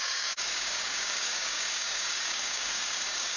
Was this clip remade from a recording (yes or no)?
yes